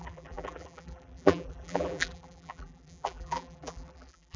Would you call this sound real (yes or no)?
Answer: no